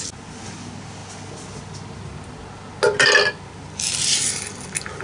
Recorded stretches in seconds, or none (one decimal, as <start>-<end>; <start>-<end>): 0.0-5.0